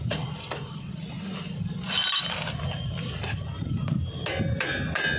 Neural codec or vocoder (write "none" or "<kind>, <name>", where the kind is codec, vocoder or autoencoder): none